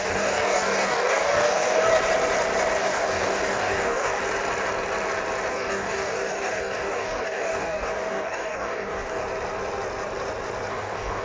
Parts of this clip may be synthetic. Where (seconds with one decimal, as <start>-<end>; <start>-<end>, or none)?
0.0-1.9; 2.8-4.2; 5.5-9.2; 10.7-11.2

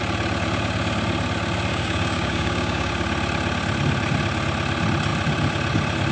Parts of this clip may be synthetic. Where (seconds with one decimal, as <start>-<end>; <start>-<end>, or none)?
1.7-2.9

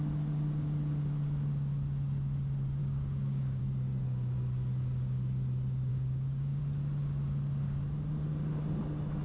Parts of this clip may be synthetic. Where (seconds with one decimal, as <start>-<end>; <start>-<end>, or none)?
2.8-3.6; 5.9-6.6

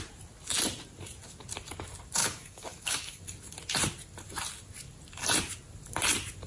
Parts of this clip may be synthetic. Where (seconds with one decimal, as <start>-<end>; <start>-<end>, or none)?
2.2-3.2

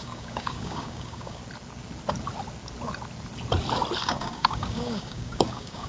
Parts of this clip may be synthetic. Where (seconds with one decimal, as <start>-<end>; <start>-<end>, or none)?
0.0-1.4; 4.0-5.9